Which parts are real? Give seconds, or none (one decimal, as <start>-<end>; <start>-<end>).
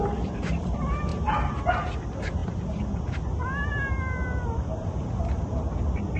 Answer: 0.0-6.2